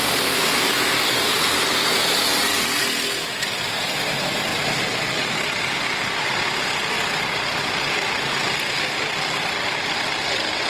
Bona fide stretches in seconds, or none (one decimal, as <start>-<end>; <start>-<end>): 0.0-2.3; 2.8-4.5; 5.3-10.7